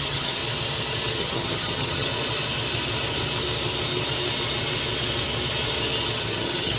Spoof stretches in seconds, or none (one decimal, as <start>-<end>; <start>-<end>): 0.0-0.4; 1.2-2.1; 6.2-6.8